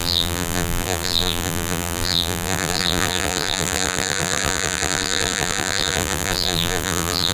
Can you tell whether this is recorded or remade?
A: remade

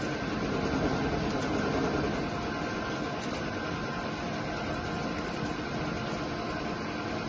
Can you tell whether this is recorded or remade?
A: recorded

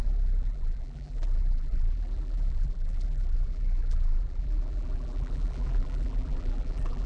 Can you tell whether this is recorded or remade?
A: remade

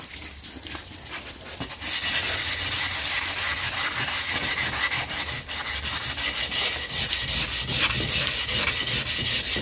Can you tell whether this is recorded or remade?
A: recorded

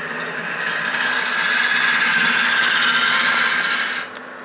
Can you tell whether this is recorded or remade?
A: recorded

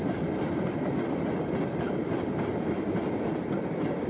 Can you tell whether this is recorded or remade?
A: remade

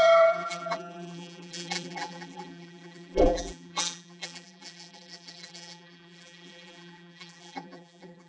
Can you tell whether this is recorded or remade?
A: remade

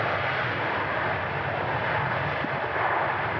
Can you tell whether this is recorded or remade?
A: recorded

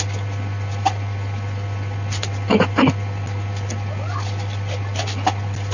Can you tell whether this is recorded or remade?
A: recorded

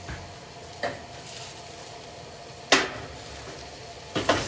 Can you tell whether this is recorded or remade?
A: recorded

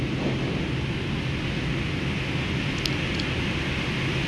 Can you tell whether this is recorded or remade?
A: recorded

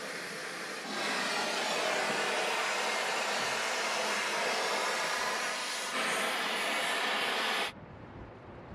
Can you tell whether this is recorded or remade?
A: remade